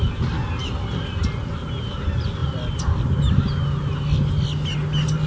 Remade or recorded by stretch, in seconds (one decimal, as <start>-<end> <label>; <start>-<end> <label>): 0.0-5.3 recorded